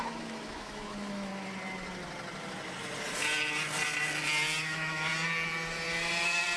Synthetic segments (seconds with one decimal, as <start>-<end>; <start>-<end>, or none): 0.0-1.3; 4.6-5.1